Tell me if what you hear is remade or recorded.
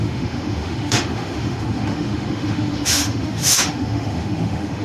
remade